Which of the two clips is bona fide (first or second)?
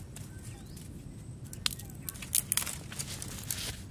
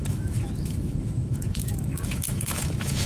first